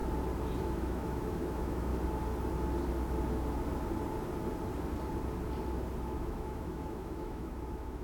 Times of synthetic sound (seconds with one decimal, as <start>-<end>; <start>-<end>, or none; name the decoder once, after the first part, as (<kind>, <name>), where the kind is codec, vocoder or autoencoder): 0.6-1.9 (autoencoder, DAC-VAE); 6.0-8.0